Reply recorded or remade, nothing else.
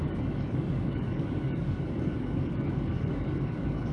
remade